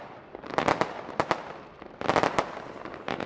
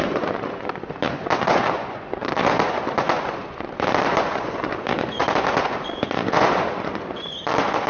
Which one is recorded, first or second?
first